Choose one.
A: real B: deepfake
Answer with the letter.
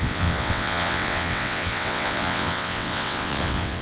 B